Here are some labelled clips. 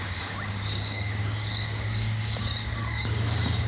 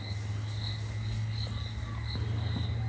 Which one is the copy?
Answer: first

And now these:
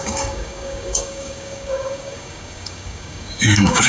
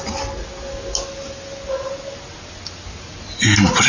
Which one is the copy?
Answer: first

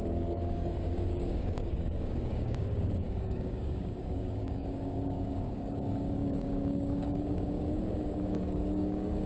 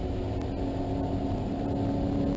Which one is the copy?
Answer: first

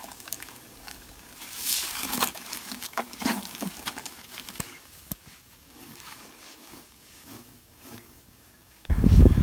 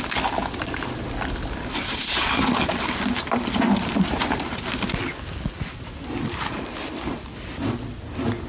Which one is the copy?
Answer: first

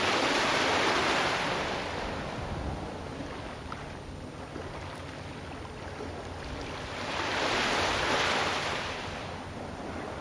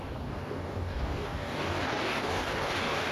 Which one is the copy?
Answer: second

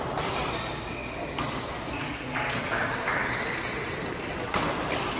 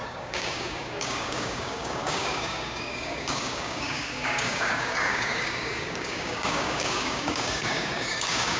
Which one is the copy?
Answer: second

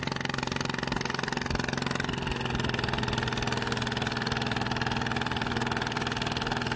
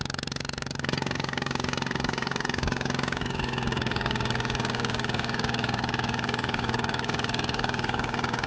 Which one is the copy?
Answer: second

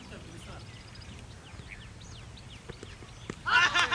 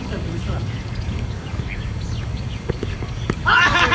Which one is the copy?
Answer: second